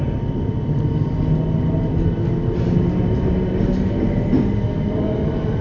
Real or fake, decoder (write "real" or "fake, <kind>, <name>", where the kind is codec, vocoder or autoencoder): real